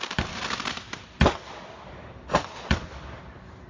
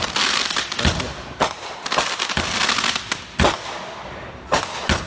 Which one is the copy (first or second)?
first